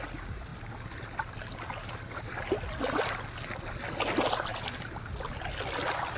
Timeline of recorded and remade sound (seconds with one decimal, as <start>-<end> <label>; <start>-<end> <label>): 0.0-6.2 recorded